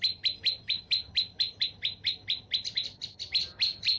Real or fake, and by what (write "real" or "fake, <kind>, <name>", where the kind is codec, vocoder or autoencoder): real